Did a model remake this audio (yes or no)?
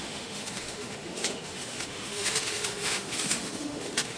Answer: yes